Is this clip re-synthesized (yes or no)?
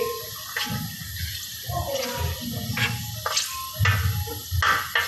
no